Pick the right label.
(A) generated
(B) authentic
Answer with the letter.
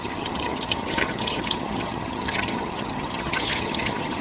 A